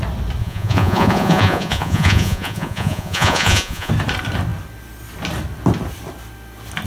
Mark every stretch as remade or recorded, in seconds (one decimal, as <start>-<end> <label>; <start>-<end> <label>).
0.0-0.4 recorded; 0.4-3.9 remade; 3.9-6.9 recorded

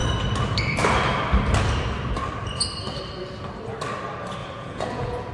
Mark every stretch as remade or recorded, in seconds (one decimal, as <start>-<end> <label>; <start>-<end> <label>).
0.0-4.4 recorded; 4.4-5.3 remade

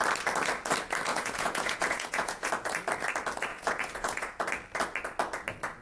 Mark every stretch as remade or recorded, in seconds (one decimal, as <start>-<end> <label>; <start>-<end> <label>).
0.0-1.1 recorded; 1.1-2.5 remade; 2.5-3.5 recorded; 3.5-4.4 remade; 4.4-5.8 recorded

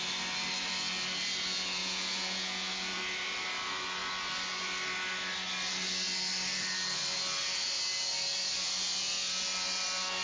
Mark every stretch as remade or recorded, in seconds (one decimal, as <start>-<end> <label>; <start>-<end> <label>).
0.0-1.8 recorded; 1.8-3.0 remade; 3.0-10.2 recorded

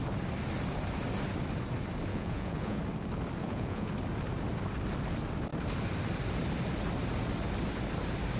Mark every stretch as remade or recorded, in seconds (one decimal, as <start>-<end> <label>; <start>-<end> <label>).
0.0-2.1 recorded; 2.1-2.8 remade; 2.8-3.4 recorded; 3.4-3.9 remade; 3.9-8.4 recorded

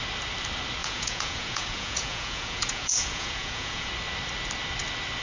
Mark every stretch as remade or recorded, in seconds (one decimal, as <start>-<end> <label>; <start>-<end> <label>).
0.0-0.8 recorded; 0.8-3.9 remade; 3.9-5.2 recorded

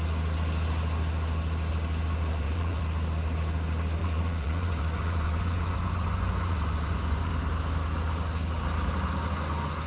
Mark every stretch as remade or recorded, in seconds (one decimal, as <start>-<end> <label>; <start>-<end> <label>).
0.0-2.3 recorded; 2.3-2.8 remade; 2.8-4.0 recorded; 4.0-7.3 remade; 7.3-9.9 recorded